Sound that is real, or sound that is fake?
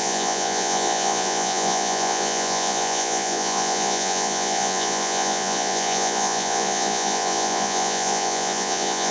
fake